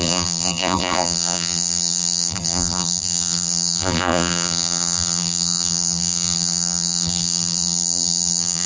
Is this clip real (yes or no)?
no